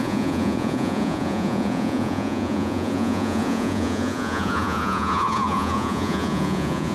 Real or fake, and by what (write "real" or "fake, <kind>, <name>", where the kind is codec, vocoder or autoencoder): fake, vocoder, Vocos